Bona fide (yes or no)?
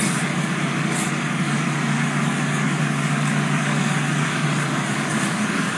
no